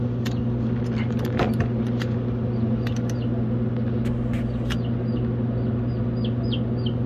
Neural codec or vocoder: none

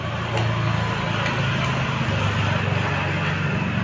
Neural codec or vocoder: none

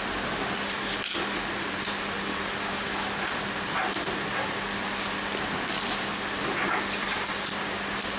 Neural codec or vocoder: none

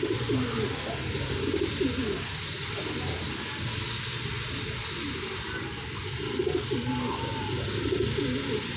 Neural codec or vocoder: none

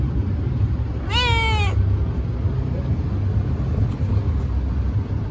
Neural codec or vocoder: none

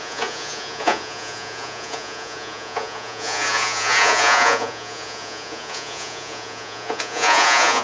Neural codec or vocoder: vocoder, Vocos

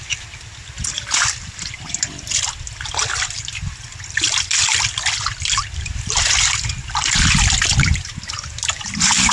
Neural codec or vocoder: none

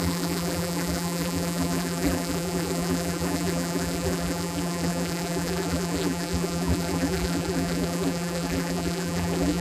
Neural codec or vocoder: vocoder, BigVGAN v2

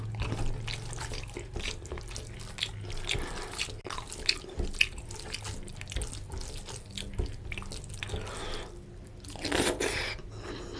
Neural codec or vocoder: none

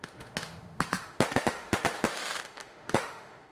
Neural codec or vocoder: autoencoder, DAC-VAE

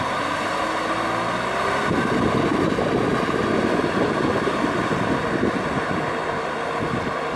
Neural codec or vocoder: none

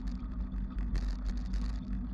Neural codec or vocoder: none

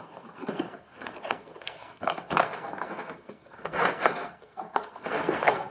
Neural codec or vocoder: codec, SNAC